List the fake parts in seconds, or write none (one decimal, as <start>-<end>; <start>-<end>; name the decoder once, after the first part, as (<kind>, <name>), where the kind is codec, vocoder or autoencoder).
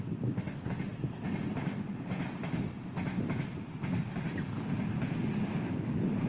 none